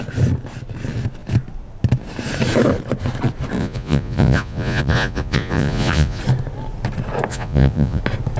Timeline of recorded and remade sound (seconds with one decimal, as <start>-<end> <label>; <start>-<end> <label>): 0.0-3.6 recorded; 3.6-6.2 remade; 6.2-7.3 recorded; 7.3-8.0 remade; 8.0-8.4 recorded

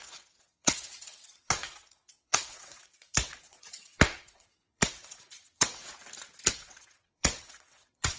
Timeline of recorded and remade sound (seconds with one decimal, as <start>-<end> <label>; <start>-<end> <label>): 0.0-5.8 remade; 5.8-6.5 recorded; 6.5-8.2 remade

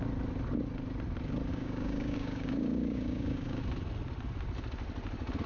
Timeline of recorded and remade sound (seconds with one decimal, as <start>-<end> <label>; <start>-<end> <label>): 0.0-1.5 recorded; 1.5-3.6 remade; 3.6-5.5 recorded

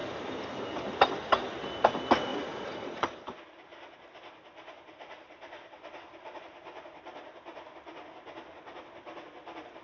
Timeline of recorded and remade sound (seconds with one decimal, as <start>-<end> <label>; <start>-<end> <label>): 0.0-2.3 recorded; 2.3-3.2 remade; 3.2-9.8 recorded

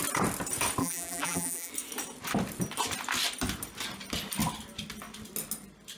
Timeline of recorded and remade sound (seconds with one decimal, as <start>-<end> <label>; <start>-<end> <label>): 0.0-0.8 recorded; 0.8-1.7 remade; 1.7-6.0 recorded

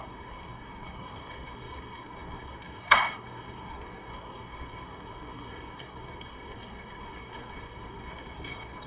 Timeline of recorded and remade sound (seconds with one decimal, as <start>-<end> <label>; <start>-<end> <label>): 0.0-8.9 remade